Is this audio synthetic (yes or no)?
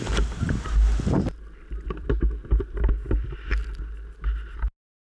no